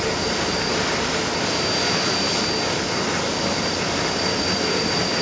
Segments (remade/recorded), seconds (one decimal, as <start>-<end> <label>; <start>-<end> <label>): 0.0-0.5 remade; 0.5-3.6 recorded; 3.6-5.2 remade